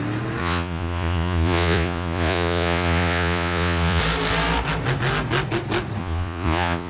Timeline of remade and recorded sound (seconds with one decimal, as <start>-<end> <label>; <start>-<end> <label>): 0.0-0.4 recorded; 0.4-4.0 remade; 4.0-6.0 recorded; 6.0-6.9 remade